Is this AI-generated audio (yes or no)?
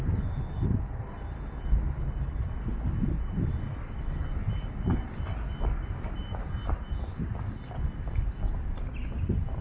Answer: no